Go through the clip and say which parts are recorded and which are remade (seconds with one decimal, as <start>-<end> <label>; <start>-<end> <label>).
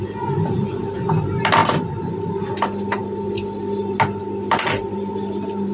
0.0-5.7 remade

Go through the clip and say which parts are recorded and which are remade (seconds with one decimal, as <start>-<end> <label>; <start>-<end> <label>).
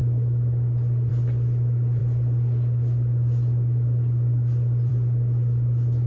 0.0-6.1 recorded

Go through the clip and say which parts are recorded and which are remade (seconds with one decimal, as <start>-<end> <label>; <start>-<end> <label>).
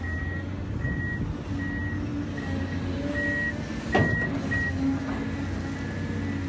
0.0-6.5 recorded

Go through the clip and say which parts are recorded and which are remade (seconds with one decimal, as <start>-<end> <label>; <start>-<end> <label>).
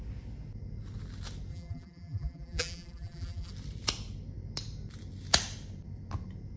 0.0-1.5 recorded; 1.5-3.5 remade; 3.5-6.6 recorded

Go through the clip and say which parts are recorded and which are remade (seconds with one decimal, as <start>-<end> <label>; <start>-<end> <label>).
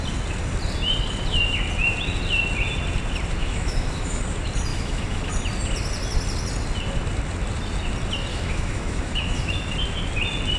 0.0-3.4 recorded; 3.4-4.2 remade; 4.2-4.7 recorded; 4.7-5.3 remade; 5.3-8.3 recorded; 8.3-9.7 remade; 9.7-10.6 recorded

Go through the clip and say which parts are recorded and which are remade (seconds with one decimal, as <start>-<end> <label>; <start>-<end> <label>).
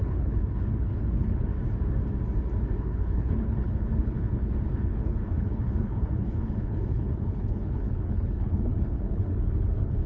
0.0-1.5 remade; 1.5-2.8 recorded; 2.8-10.1 remade